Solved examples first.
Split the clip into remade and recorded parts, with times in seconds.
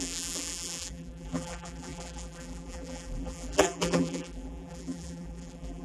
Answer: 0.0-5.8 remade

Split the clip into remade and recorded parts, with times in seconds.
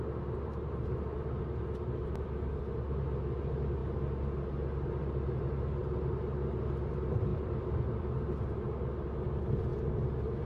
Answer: 0.0-1.1 recorded; 1.1-2.3 remade; 2.3-7.3 recorded; 7.3-8.1 remade; 8.1-10.5 recorded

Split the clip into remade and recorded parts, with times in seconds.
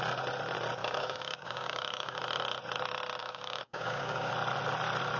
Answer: 0.0-0.8 recorded; 0.8-2.2 remade; 2.2-3.2 recorded; 3.2-4.3 remade; 4.3-5.2 recorded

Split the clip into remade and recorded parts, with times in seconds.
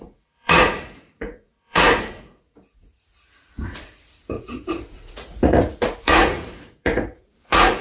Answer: 0.0-7.8 remade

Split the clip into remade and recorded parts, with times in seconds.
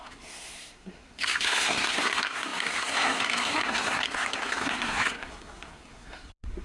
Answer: 0.0-6.6 remade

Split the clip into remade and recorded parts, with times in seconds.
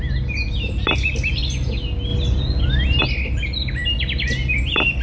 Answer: 0.0-5.0 recorded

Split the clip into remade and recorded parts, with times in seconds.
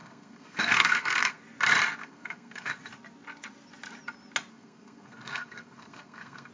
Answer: 0.0-1.4 remade; 1.4-2.0 recorded; 2.0-2.7 remade; 2.7-4.5 recorded; 4.5-6.5 remade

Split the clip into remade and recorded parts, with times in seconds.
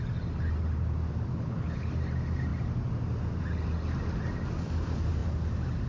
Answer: 0.0-1.3 recorded; 1.3-1.9 remade; 1.9-5.9 recorded